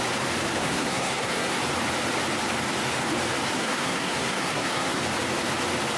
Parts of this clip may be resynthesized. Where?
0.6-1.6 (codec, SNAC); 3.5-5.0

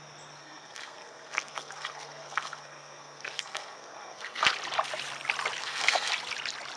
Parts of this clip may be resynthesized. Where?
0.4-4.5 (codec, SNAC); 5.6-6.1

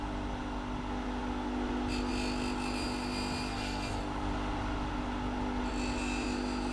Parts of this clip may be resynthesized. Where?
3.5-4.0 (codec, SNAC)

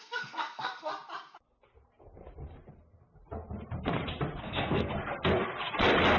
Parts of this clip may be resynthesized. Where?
0.0-0.9 (codec, SNAC); 4.4-4.9